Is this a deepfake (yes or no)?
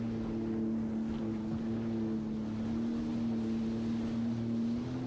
no